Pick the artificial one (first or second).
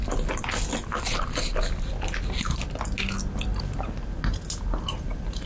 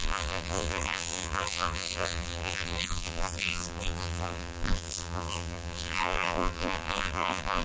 second